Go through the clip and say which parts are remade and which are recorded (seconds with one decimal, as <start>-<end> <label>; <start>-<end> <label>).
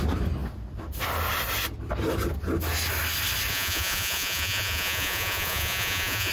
0.0-3.5 recorded; 3.5-6.3 remade